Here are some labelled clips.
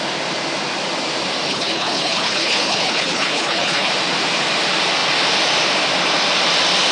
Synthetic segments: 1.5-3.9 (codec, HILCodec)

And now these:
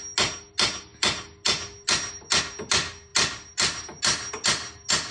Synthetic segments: none

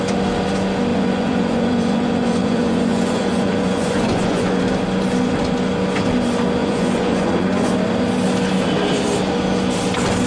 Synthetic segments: 0.9-4.6 (vocoder, Vocos); 6.6-7.7